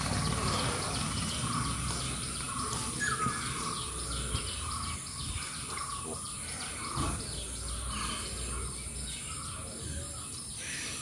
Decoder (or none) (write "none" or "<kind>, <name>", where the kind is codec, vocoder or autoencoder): none